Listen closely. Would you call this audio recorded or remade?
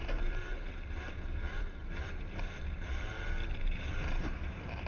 remade